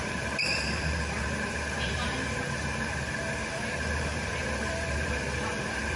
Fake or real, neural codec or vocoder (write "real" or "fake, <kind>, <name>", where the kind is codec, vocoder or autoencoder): fake, vocoder, BigVGAN v2